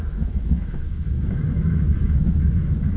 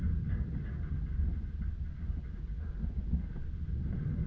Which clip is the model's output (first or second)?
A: first